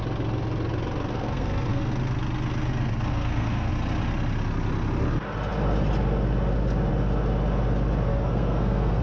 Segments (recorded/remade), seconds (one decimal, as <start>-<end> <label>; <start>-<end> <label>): 0.0-1.1 recorded; 1.1-1.9 remade; 1.9-3.1 recorded; 3.1-3.7 remade; 3.7-8.1 recorded; 8.1-9.0 remade